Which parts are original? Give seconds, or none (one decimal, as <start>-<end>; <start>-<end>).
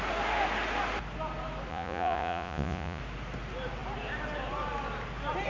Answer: 0.0-1.7; 3.0-5.5